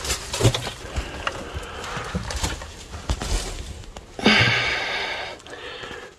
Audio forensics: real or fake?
real